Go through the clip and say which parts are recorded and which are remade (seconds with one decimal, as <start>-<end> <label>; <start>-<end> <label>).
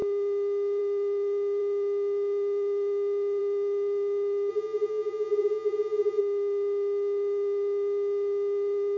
0.0-4.5 recorded; 4.5-6.2 remade; 6.2-9.0 recorded